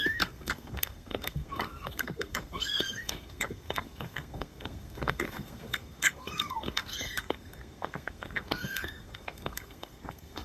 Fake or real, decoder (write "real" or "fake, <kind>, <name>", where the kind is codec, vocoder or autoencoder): fake, codec, SNAC